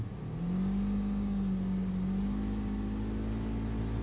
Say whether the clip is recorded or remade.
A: recorded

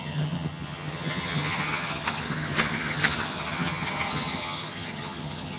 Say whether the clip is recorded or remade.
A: remade